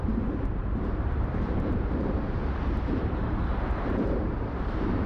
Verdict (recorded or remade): remade